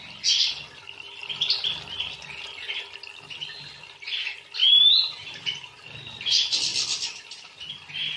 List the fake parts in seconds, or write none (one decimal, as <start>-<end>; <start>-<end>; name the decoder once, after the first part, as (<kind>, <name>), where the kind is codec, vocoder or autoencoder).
4.6-5.8 (vocoder, BigVGAN v2)

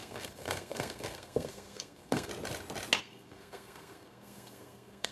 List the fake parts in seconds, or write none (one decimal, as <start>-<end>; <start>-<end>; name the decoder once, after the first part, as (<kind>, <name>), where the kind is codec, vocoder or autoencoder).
0.0-2.3 (codec, SNAC); 3.0-5.1

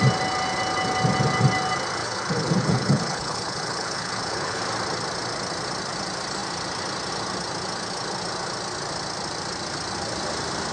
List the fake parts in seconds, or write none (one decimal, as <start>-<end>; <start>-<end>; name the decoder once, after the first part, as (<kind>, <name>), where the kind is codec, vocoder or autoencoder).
2.0-4.6 (codec, HILCodec)

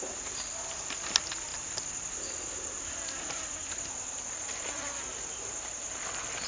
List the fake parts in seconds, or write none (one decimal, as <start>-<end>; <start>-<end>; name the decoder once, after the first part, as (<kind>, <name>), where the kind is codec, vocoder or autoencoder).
none